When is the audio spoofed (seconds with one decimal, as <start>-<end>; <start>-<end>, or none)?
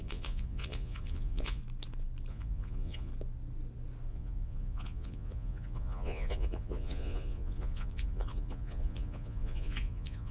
0.0-1.6; 2.3-3.1; 4.1-10.3